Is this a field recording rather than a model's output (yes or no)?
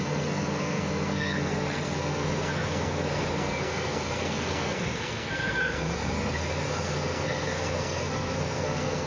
no